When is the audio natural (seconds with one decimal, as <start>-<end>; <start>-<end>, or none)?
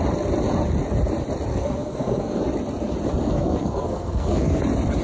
0.0-1.5; 2.4-3.2; 4.6-5.0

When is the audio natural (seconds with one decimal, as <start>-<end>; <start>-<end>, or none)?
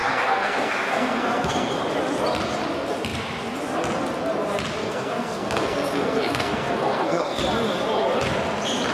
1.8-4.8; 7.4-8.9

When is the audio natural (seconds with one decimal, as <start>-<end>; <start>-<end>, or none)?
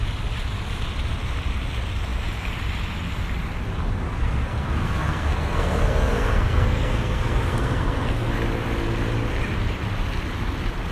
0.0-4.1; 8.3-10.9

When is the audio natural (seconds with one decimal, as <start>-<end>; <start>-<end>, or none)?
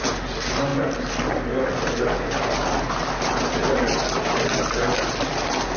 0.0-5.8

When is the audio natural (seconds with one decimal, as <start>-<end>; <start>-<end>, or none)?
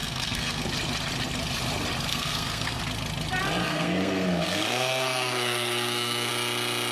0.6-2.1; 2.8-3.6; 6.3-6.9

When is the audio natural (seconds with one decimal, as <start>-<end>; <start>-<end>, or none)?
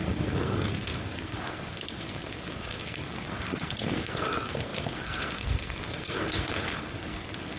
none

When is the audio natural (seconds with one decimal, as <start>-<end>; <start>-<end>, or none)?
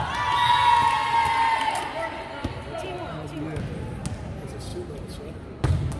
0.0-6.0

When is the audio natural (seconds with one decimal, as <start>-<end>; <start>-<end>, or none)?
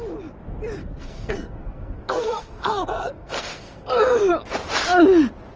0.0-0.8; 4.2-5.6